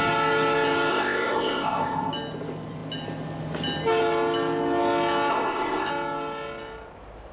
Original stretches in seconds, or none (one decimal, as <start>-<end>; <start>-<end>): 0.0-0.9; 2.1-5.3; 5.9-7.3